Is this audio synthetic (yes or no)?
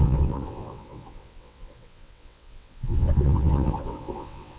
yes